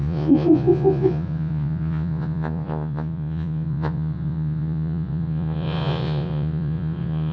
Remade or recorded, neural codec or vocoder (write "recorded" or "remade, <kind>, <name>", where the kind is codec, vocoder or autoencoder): remade, vocoder, Vocos